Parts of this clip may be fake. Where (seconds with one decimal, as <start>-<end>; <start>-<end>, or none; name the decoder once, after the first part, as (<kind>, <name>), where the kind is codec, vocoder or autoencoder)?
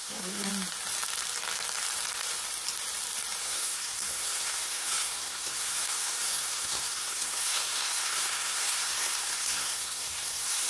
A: 0.0-0.5 (codec, SNAC); 3.4-10.7